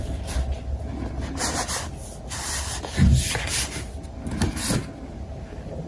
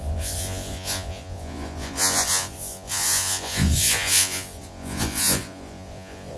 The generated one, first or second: second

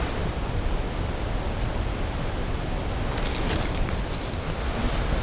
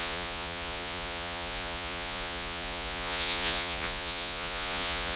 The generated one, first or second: second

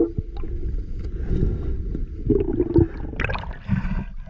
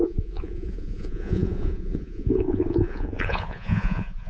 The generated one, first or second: second